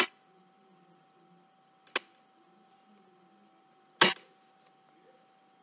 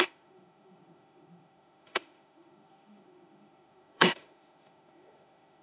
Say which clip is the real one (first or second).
first